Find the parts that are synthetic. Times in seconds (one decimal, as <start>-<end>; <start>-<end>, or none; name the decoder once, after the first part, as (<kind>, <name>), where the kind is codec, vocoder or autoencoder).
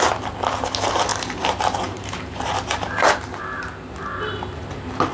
none